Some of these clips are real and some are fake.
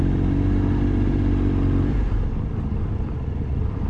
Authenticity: real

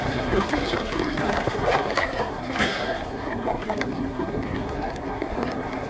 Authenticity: fake